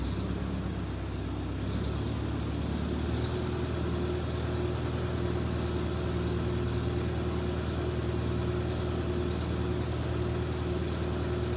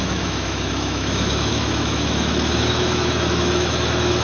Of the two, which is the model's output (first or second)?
second